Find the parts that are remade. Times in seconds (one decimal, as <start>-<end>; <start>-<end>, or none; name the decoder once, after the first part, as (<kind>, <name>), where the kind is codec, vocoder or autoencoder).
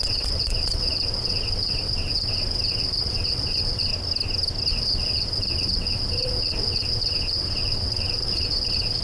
0.0-3.9 (vocoder, WaveNeXt); 4.7-9.0